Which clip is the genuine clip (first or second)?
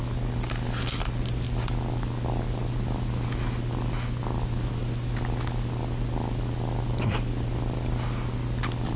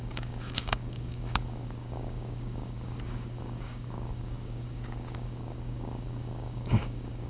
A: first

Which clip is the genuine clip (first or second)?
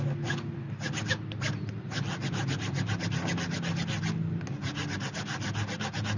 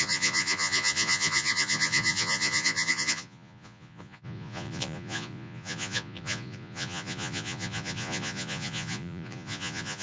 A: first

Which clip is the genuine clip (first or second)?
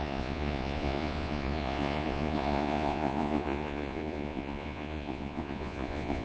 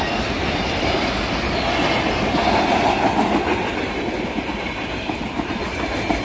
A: second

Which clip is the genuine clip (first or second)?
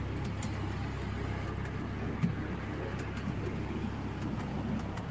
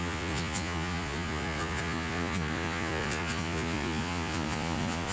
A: first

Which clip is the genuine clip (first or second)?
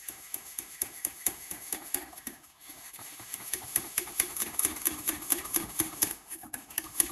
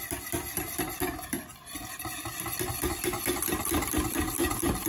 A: second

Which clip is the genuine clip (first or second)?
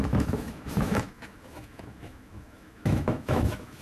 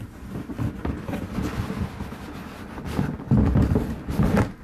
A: second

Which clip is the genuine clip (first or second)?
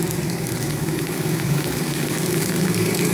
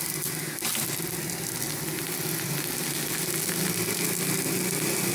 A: second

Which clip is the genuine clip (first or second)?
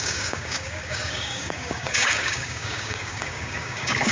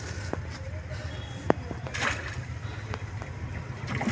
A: second